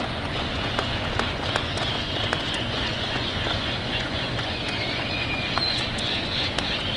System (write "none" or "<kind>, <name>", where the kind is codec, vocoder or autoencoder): vocoder, Vocos